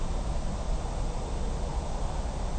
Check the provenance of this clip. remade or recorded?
recorded